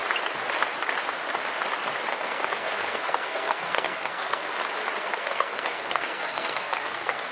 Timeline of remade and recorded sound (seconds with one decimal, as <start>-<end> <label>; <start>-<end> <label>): 0.0-2.1 recorded; 2.1-4.5 remade; 4.5-5.0 recorded; 5.0-7.3 remade